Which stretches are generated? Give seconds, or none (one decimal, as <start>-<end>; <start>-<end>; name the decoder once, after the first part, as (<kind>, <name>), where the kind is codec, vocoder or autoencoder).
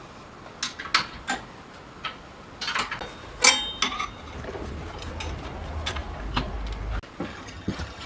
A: 7.3-8.1 (vocoder, HiFi-GAN)